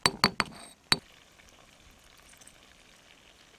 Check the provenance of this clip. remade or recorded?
recorded